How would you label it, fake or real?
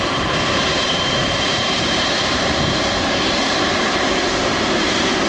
fake